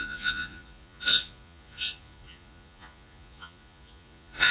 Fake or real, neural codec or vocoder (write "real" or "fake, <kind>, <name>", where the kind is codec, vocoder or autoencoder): fake, vocoder, Vocos